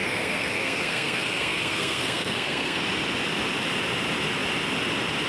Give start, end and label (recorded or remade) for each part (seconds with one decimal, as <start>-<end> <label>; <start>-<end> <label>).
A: 0.0-2.8 remade; 2.8-5.3 recorded